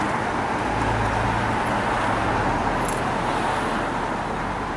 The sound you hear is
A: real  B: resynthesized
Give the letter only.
A